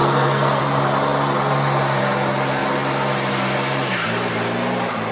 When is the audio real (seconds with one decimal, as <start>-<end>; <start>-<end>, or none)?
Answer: 0.6-5.1